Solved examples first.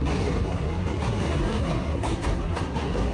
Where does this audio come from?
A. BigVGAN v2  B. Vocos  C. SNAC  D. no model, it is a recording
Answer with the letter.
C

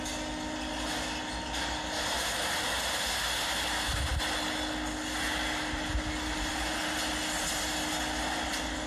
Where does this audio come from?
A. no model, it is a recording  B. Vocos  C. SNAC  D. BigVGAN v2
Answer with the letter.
A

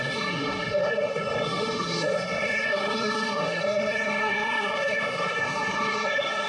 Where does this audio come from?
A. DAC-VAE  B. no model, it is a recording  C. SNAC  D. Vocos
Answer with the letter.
C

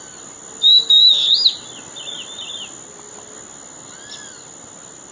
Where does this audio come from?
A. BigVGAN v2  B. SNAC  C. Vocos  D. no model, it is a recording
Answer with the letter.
D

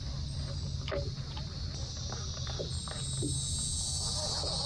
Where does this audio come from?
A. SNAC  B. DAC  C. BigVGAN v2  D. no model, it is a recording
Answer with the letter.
D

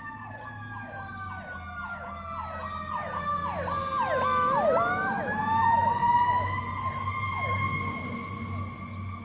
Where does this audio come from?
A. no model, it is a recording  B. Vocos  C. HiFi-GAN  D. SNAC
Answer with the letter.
A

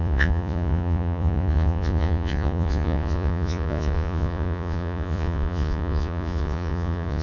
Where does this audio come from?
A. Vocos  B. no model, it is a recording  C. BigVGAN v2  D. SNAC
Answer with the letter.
A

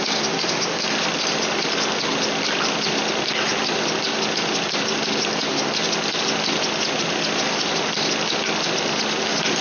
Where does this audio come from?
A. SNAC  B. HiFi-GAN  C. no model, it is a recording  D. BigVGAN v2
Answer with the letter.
C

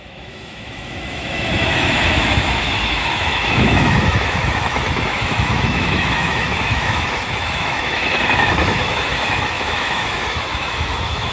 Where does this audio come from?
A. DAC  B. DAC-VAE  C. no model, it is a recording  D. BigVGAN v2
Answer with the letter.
B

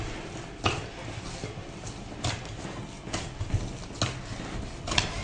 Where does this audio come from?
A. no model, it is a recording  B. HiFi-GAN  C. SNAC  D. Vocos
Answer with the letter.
A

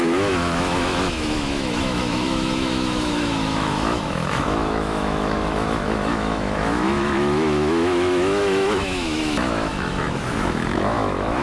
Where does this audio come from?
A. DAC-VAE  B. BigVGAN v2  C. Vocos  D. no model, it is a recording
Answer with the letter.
A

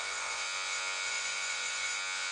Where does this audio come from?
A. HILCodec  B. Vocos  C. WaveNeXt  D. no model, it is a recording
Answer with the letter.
B